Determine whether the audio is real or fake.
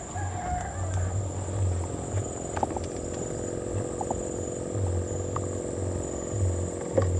real